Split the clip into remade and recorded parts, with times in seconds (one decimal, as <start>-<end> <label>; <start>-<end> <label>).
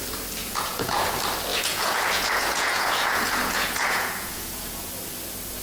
0.0-0.4 recorded; 0.4-1.1 remade; 1.1-1.5 recorded; 1.5-4.9 remade; 4.9-5.6 recorded